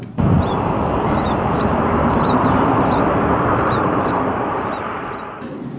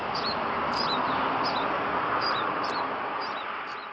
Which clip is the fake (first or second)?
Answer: first